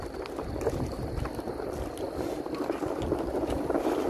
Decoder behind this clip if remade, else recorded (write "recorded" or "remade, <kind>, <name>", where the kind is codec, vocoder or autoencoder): recorded